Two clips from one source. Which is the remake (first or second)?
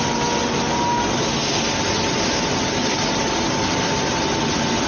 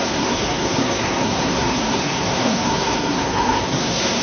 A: second